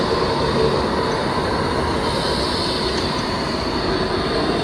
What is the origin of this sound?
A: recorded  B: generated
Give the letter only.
A